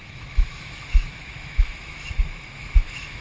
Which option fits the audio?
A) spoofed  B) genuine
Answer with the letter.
A